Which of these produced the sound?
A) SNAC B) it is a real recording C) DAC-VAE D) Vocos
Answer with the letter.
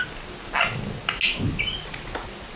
B